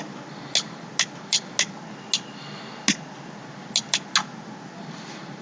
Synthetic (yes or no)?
no